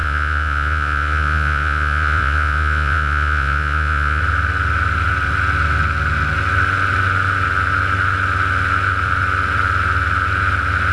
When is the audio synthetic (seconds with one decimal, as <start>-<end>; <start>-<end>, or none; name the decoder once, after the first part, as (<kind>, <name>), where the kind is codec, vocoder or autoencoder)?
0.0-4.2 (vocoder, Vocos)